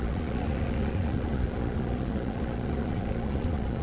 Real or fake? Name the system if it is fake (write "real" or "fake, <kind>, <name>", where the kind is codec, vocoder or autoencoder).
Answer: fake, vocoder, Vocos